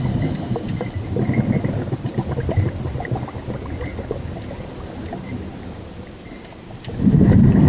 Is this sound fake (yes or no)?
no